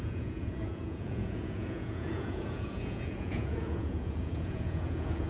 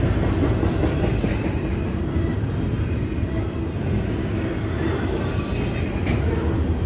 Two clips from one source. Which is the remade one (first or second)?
first